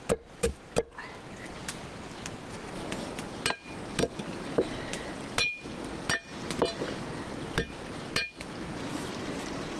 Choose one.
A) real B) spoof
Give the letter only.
A